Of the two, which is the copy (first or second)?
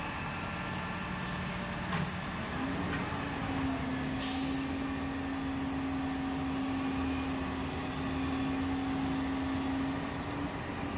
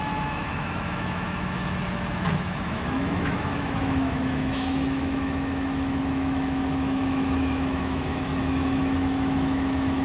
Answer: second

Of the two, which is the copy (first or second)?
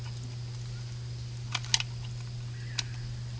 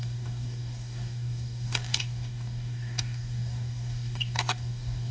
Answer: second